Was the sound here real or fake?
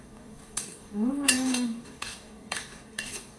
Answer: fake